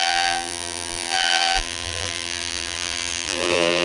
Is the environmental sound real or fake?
fake